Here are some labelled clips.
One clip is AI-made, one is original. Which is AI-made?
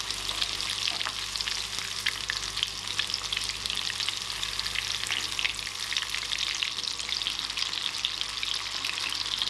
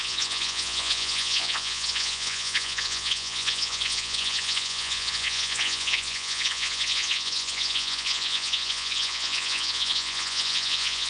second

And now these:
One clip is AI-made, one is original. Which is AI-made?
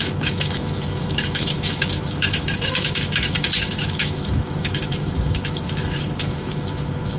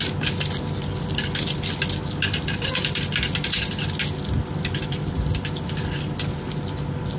first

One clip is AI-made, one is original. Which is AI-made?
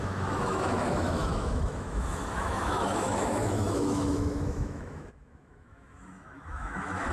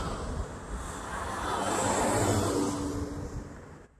first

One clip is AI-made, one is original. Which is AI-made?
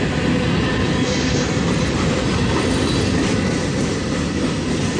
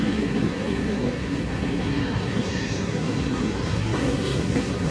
second